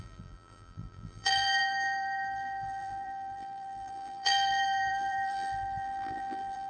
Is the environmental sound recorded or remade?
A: remade